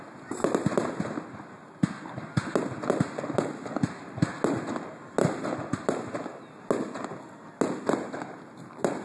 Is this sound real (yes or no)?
yes